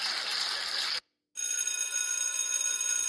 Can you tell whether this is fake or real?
real